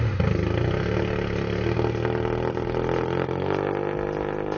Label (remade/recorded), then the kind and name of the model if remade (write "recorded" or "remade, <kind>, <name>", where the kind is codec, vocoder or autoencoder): recorded